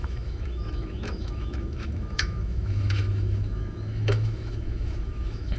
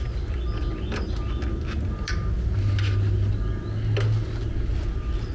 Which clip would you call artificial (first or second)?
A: first